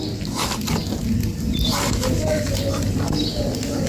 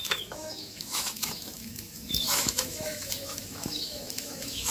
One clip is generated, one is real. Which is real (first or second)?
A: first